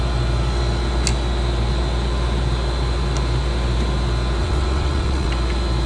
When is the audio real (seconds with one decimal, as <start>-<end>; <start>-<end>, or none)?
0.0-4.4; 5.3-5.9